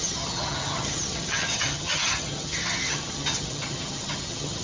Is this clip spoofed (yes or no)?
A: yes